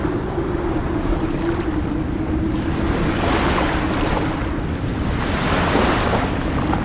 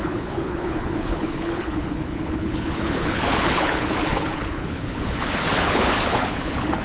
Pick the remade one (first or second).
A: second